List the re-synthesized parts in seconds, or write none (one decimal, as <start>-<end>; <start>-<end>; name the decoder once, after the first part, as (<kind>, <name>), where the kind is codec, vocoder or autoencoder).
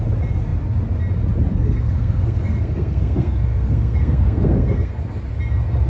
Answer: 1.5-5.0 (codec, SNAC)